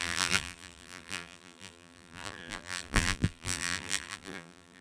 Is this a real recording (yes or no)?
no